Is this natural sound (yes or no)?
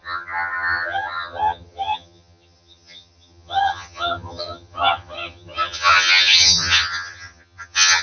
no